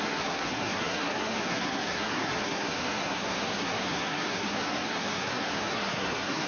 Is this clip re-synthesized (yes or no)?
yes